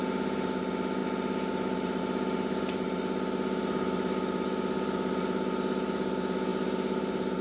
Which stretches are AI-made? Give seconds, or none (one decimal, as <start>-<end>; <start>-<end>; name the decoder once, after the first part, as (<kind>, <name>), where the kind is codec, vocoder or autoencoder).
none